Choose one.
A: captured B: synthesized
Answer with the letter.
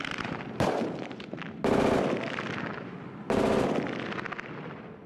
A